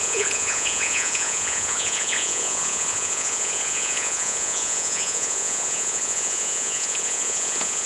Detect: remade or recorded remade